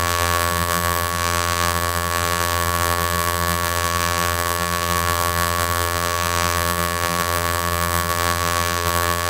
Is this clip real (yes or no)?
no